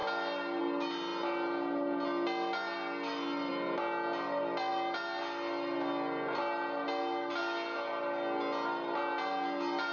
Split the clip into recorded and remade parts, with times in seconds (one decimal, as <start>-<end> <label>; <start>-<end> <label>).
0.0-9.9 recorded